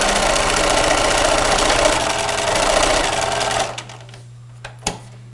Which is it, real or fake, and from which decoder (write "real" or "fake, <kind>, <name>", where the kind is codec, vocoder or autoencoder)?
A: real